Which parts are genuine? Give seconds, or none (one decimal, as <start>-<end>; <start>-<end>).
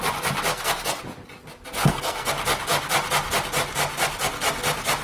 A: 0.0-0.5; 1.0-1.8; 2.3-5.0